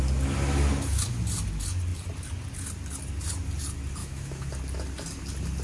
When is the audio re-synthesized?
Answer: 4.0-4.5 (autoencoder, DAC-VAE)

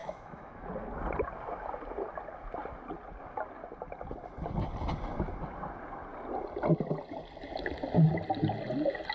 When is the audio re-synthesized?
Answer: 0.0-0.7 (autoencoder, DAC-VAE)